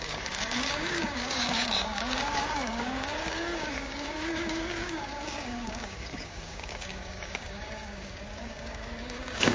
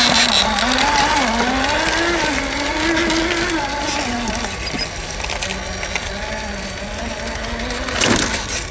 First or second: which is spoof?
first